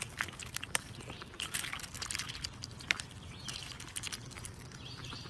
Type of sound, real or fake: real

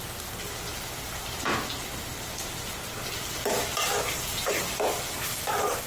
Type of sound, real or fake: real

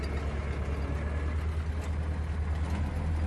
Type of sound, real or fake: real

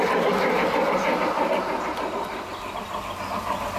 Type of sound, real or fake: real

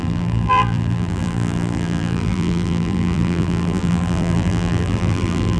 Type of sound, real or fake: fake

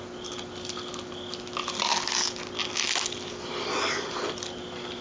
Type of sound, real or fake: real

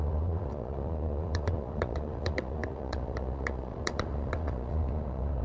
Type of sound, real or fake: fake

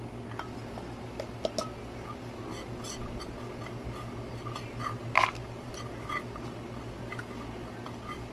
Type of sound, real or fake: real